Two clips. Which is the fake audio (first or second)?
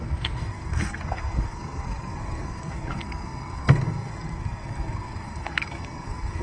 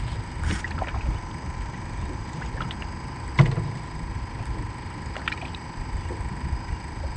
first